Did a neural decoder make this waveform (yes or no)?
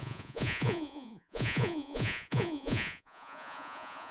yes